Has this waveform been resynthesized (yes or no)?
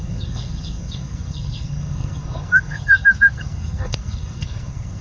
yes